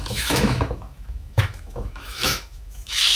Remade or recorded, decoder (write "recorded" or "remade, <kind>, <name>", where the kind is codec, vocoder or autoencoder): remade, autoencoder, DAC-VAE